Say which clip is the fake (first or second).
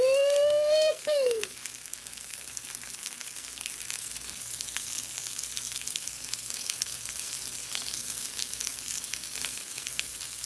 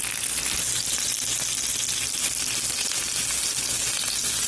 first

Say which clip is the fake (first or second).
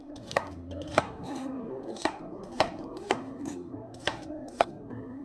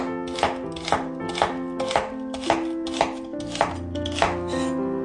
first